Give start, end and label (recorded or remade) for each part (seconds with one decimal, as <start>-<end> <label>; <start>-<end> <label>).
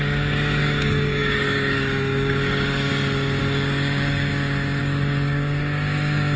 0.0-2.9 remade; 2.9-3.4 recorded; 3.4-4.3 remade; 4.3-4.8 recorded; 4.8-6.4 remade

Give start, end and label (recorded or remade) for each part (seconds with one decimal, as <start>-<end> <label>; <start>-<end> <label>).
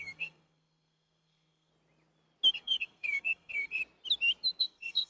0.0-1.7 remade; 1.7-2.5 recorded; 2.5-3.8 remade; 3.8-4.6 recorded; 4.6-5.1 remade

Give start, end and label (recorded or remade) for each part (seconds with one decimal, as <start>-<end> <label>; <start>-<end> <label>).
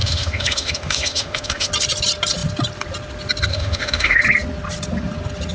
0.0-1.7 remade; 1.7-3.5 recorded; 3.5-4.2 remade; 4.2-5.5 recorded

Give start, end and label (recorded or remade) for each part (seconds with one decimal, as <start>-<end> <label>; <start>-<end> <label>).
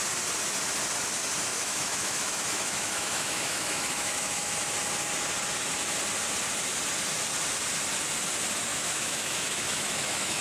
0.0-1.5 recorded; 1.5-4.5 remade; 4.5-8.7 recorded; 8.7-10.4 remade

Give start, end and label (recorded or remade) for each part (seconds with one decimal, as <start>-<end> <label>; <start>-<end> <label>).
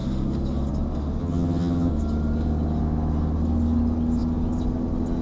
0.0-1.2 recorded; 1.2-1.9 remade; 1.9-5.2 recorded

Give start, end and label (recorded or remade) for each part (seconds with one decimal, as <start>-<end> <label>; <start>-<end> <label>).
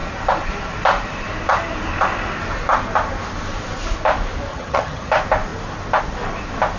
0.0-4.5 recorded; 4.5-5.1 remade; 5.1-6.8 recorded